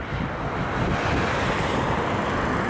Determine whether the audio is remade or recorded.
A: recorded